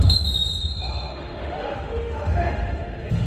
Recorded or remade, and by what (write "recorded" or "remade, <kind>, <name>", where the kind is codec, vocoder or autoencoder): remade, autoencoder, DAC-VAE